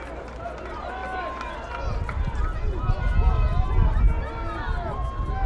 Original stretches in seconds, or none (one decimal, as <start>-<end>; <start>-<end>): 0.0-5.5